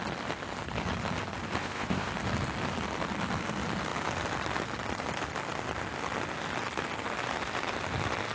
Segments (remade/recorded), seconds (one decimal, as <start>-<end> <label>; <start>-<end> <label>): 0.0-1.6 recorded; 1.6-2.1 remade; 2.1-8.3 recorded